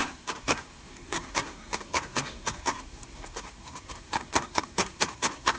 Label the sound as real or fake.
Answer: fake